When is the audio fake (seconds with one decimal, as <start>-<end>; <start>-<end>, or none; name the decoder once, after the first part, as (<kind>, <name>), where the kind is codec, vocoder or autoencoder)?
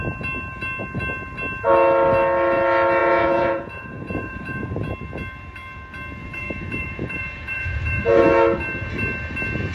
3.0-4.9 (vocoder, Vocos); 6.2-8.2